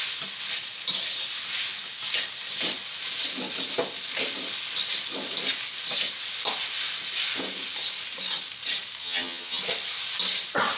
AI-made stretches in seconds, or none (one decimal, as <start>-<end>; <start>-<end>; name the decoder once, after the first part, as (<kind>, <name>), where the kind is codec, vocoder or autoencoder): 9.0-9.6 (vocoder, HiFi-GAN)